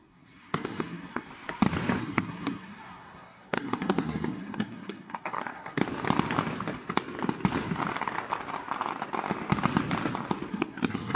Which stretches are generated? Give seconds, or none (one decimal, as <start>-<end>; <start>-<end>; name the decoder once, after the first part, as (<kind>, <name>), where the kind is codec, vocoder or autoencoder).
0.0-1.3 (codec, SNAC); 2.0-5.8; 10.5-11.2